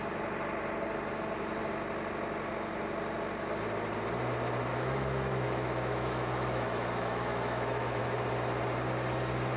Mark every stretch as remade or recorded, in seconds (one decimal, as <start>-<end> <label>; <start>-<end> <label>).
0.0-4.7 recorded; 4.7-8.0 remade; 8.0-9.6 recorded